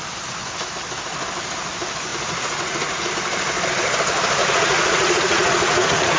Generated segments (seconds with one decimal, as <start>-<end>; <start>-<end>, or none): 2.1-3.1; 4.4-6.2